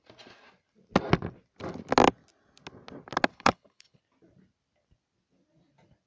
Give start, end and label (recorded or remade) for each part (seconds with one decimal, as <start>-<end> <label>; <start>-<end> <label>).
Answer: 0.0-3.3 recorded; 3.3-4.0 remade; 4.0-6.1 recorded